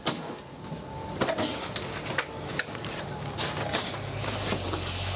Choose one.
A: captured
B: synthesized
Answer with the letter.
A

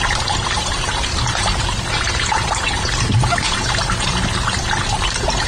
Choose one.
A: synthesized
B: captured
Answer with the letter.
A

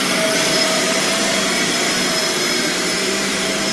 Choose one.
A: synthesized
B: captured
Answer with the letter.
A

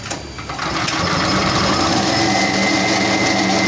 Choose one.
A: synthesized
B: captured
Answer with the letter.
B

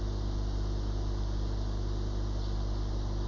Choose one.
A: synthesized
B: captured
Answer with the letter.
B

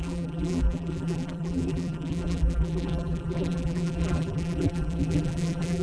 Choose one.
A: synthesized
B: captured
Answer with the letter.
A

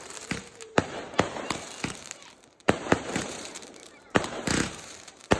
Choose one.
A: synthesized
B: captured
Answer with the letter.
A